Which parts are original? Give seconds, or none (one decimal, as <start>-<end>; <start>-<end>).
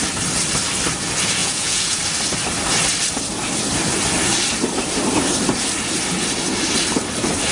0.0-1.4; 2.0-7.5